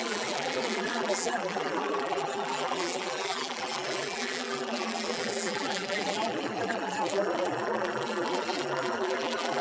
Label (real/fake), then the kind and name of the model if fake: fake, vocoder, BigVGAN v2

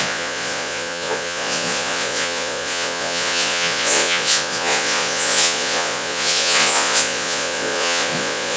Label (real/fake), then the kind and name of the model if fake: fake, vocoder, Vocos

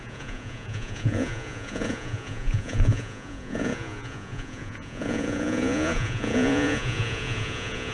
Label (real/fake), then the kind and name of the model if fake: fake, vocoder, Vocos